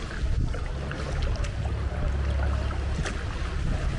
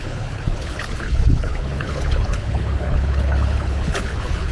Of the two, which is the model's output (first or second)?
second